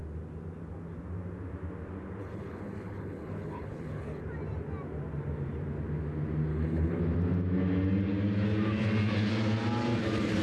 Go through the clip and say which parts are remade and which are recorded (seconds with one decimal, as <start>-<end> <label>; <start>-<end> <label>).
0.0-2.2 recorded; 2.2-4.2 remade; 4.2-6.5 recorded; 6.5-7.0 remade; 7.0-10.4 recorded